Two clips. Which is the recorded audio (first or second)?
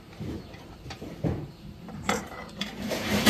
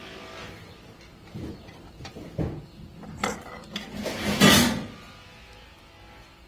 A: second